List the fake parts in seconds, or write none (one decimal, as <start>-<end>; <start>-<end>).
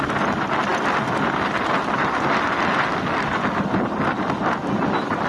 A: none